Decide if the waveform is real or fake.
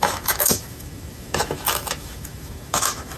fake